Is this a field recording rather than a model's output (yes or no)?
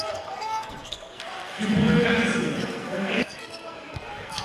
no